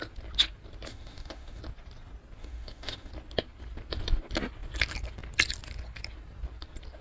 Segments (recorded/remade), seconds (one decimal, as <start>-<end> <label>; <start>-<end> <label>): 0.0-0.9 recorded; 0.9-1.6 remade; 1.6-2.4 recorded; 2.4-3.1 remade; 3.1-7.0 recorded